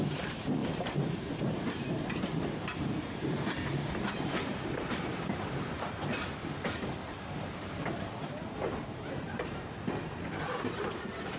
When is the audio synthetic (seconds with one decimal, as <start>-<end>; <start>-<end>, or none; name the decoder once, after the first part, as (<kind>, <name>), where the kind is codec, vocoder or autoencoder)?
0.0-11.4 (vocoder, BigVGAN v2)